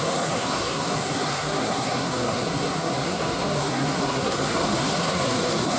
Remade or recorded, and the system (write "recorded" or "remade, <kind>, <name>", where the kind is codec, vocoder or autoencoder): remade, codec, SNAC